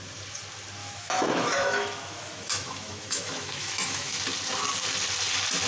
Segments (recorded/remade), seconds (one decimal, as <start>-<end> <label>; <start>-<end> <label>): 0.0-0.8 recorded; 0.8-4.2 remade; 4.2-5.7 recorded